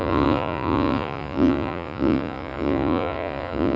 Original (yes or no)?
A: no